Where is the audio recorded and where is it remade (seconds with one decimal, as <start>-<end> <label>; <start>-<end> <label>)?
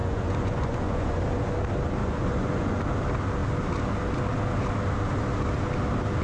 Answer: 0.0-1.2 remade; 1.2-2.0 recorded; 2.0-2.8 remade; 2.8-6.2 recorded